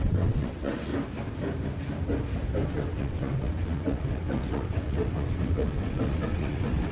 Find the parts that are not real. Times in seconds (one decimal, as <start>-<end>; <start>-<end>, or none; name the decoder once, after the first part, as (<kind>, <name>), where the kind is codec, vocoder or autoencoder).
0.0-0.9 (vocoder, WaveNeXt); 2.7-6.9